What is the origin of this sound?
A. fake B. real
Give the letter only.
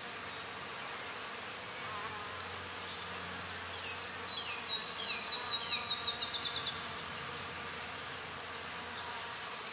B